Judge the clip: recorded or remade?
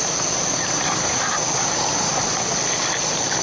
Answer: recorded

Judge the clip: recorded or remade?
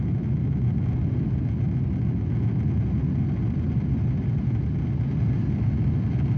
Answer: recorded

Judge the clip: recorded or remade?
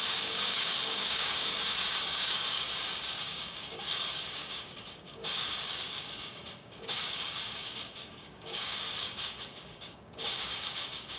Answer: remade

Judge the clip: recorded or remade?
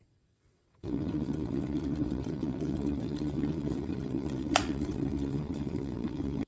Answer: remade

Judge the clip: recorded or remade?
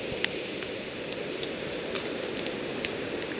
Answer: recorded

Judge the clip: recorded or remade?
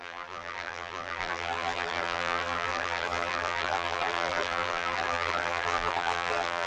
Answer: remade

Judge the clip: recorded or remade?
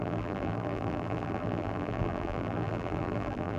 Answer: remade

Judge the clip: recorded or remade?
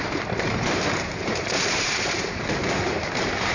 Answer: remade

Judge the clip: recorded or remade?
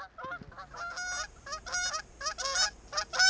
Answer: recorded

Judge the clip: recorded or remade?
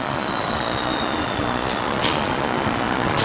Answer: remade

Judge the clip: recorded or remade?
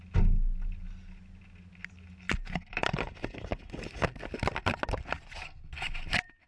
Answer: recorded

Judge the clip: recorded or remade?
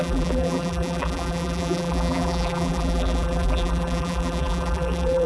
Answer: remade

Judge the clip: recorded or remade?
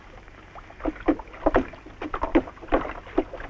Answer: recorded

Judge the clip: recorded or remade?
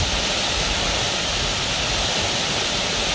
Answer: recorded